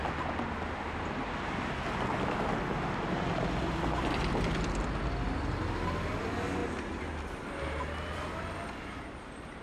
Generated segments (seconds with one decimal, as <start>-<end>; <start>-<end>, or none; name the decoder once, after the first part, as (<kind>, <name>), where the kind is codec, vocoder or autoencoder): none